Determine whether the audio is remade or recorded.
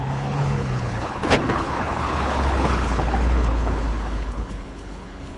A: remade